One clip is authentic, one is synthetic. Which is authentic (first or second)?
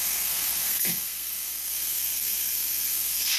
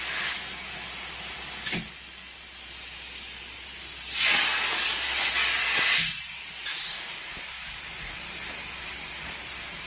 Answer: second